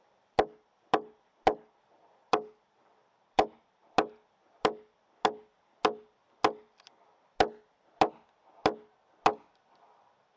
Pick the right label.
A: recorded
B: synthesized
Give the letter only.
A